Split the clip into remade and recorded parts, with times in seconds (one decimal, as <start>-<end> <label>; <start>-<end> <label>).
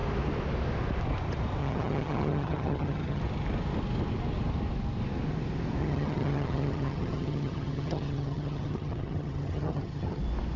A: 0.0-1.6 recorded; 1.6-3.2 remade; 3.2-5.8 recorded; 5.8-10.2 remade; 10.2-10.6 recorded